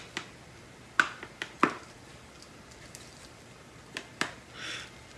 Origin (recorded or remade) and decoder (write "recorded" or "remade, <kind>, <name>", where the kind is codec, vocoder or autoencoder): recorded